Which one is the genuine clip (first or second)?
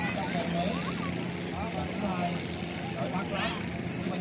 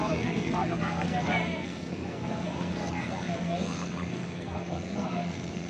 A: first